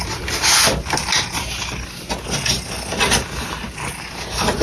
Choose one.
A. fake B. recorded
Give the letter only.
B